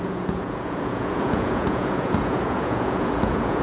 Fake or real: fake